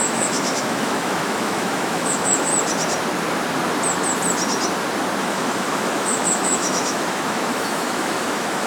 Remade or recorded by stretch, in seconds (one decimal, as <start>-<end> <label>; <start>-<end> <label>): 0.0-2.5 remade; 2.5-5.2 recorded; 5.2-8.7 remade